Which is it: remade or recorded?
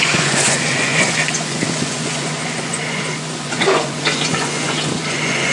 remade